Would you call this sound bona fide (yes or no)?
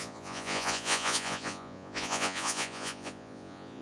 no